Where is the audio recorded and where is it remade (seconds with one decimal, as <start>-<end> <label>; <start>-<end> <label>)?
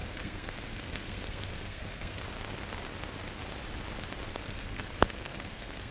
0.0-2.2 remade; 2.2-4.3 recorded; 4.3-5.9 remade